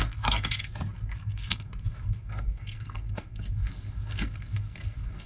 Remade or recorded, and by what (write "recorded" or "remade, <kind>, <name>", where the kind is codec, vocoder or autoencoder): remade, codec, SNAC